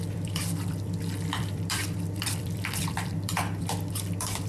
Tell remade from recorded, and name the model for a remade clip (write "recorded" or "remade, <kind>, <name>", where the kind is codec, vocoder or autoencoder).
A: remade, vocoder, BigVGAN v2